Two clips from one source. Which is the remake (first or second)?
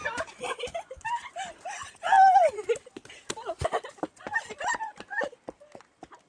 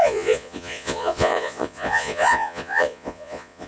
second